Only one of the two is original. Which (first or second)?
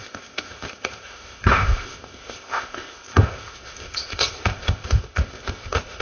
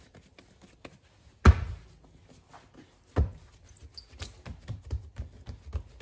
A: second